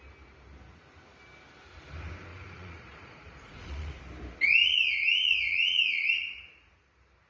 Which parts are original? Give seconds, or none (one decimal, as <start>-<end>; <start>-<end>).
0.0-2.3; 4.0-4.6; 6.7-7.3